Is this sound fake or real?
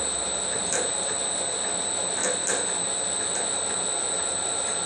real